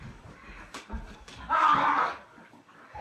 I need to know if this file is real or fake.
fake